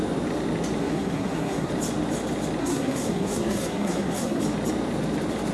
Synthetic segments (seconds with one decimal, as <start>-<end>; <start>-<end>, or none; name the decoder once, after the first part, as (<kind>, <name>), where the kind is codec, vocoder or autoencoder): 0.8-1.7 (codec, SNAC); 2.6-4.4